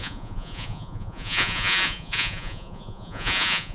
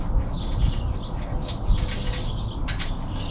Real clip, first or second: second